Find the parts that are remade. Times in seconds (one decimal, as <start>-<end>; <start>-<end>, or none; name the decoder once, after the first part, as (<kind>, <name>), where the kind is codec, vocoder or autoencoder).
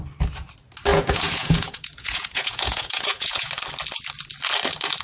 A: 0.9-3.5 (vocoder, Vocos)